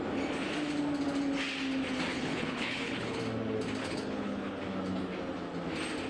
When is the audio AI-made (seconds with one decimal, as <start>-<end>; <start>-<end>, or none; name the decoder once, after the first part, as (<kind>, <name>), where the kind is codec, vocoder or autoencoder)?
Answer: 2.1-3.2 (codec, HILCodec); 3.8-4.6